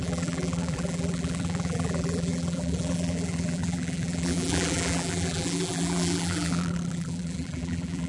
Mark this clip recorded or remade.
remade